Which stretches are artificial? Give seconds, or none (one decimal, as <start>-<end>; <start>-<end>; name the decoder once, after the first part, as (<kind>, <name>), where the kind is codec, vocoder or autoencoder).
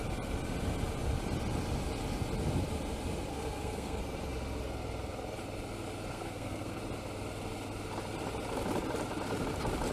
3.3-4.0 (codec, SNAC); 6.1-6.8